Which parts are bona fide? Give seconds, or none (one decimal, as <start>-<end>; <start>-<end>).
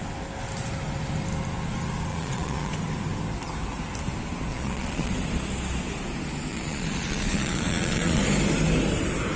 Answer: 0.0-2.1; 2.7-4.5; 5.1-6.5; 8.2-9.4